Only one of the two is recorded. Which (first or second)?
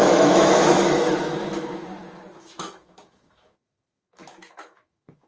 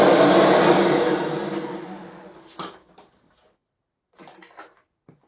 second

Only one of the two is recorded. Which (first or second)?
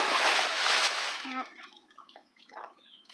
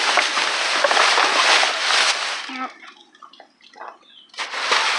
second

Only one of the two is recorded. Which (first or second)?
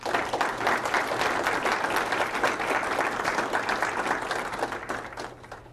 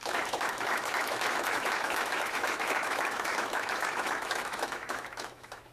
first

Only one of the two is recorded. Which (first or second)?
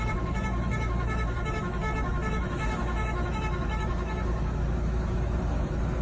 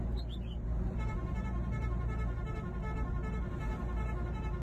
second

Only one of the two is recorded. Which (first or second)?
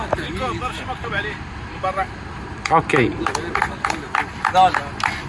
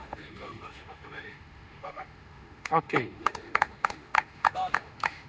first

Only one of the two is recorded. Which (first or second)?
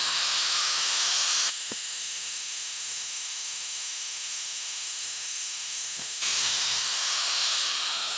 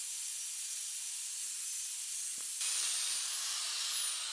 second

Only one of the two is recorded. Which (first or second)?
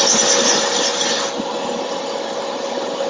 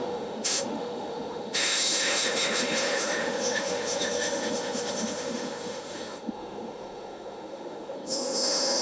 first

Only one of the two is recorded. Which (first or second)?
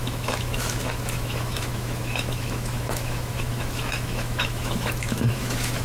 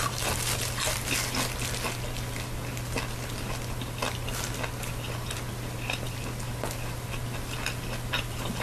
second